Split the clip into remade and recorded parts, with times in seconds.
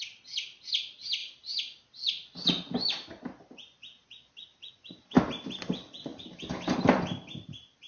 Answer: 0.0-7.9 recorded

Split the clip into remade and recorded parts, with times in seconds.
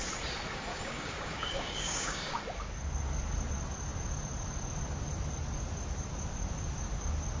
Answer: 0.0-0.7 recorded; 0.7-2.4 remade; 2.4-7.4 recorded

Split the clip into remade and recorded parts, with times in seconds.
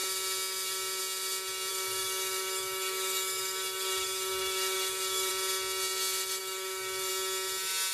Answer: 0.0-1.7 recorded; 1.7-5.3 remade; 5.3-6.4 recorded; 6.4-7.1 remade; 7.1-7.9 recorded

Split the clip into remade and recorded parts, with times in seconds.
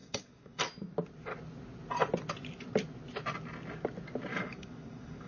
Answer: 0.0-0.6 remade; 0.6-4.3 recorded; 4.3-5.3 remade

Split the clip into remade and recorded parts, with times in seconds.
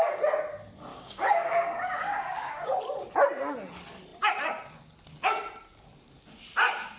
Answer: 0.0-0.9 recorded; 0.9-2.8 remade; 2.8-7.0 recorded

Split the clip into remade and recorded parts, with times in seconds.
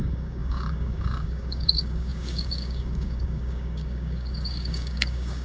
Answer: 0.0-5.4 remade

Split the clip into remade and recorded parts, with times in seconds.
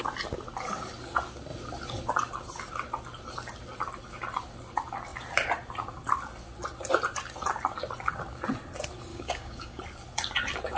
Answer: 0.0-9.1 recorded; 9.1-9.8 remade; 9.8-10.8 recorded